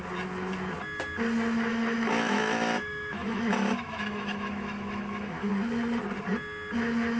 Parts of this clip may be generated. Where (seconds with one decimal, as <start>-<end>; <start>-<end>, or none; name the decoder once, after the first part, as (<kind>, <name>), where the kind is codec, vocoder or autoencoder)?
1.7-5.5 (autoencoder, DAC-VAE)